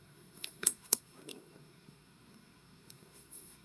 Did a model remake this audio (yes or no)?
yes